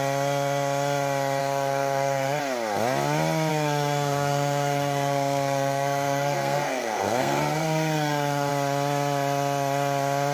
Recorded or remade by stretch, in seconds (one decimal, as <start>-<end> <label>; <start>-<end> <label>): 0.0-1.4 recorded; 1.4-2.4 remade; 2.4-3.5 recorded; 3.5-8.5 remade; 8.5-10.3 recorded